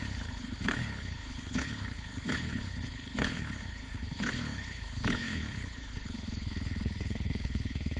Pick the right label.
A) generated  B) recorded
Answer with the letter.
A